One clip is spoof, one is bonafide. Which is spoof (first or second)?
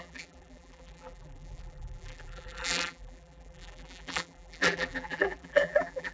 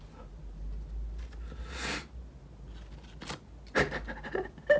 first